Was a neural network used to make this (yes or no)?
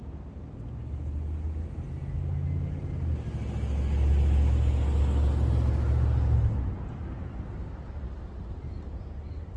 no